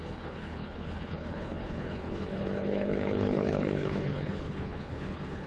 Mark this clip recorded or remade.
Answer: remade